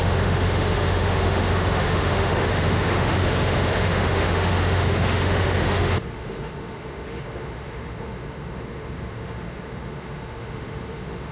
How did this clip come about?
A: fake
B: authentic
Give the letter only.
A